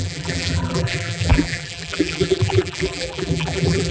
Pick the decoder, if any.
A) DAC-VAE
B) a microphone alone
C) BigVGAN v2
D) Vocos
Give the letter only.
C